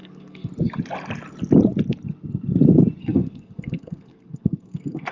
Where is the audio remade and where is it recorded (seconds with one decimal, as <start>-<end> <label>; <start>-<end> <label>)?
0.0-0.5 remade; 0.5-3.0 recorded; 3.0-5.1 remade

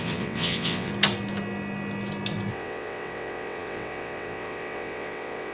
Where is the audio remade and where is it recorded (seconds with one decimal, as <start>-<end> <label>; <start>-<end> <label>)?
0.0-0.9 remade; 0.9-2.5 recorded; 2.5-5.5 remade

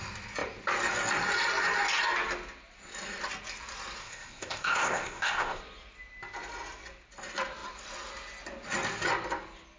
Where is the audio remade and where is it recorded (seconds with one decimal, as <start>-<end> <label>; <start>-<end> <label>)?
0.0-4.0 recorded; 4.0-5.6 remade; 5.6-9.8 recorded

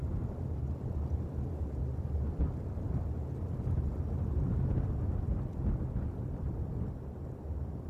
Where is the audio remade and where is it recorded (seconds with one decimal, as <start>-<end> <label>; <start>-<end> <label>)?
0.0-7.9 recorded

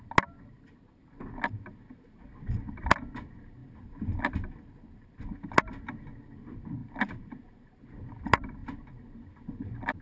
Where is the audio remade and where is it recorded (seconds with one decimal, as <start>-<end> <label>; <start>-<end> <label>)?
0.0-3.6 recorded; 3.6-5.2 remade; 5.2-10.0 recorded

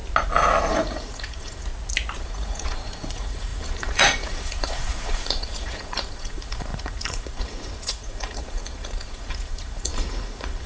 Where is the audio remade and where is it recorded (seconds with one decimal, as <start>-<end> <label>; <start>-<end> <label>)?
0.0-0.7 recorded; 0.7-1.7 remade; 1.7-2.2 recorded; 2.2-10.7 remade

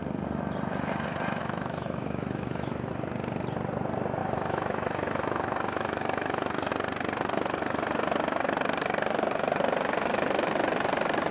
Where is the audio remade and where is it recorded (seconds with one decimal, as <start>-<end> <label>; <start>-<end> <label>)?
0.0-1.4 recorded; 1.4-2.9 remade; 2.9-4.2 recorded; 4.2-6.7 remade; 6.7-11.3 recorded

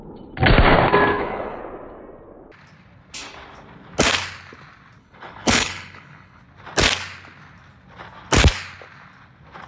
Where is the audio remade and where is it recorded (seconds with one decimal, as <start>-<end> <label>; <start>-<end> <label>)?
0.0-1.1 recorded; 1.1-1.6 remade; 1.6-5.0 recorded; 5.0-6.4 remade; 6.4-9.7 recorded